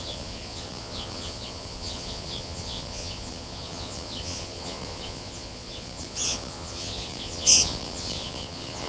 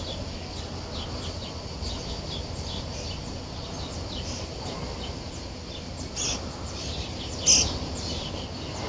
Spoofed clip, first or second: first